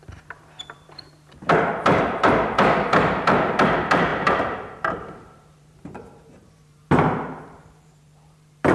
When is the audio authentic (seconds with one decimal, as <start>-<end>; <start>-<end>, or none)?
none